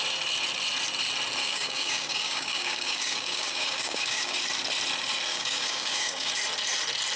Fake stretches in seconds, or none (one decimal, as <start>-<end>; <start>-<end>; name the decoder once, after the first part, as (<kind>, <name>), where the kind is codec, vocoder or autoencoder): 1.4-4.4 (codec, DAC); 5.3-6.3